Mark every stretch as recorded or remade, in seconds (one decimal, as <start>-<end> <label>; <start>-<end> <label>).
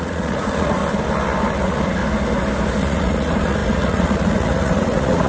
0.0-0.8 remade; 0.8-1.6 recorded; 1.6-2.0 remade; 2.0-2.8 recorded; 2.8-5.3 remade